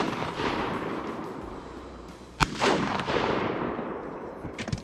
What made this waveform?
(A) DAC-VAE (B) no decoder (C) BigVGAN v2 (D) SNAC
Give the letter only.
C